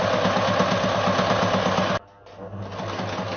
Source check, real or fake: real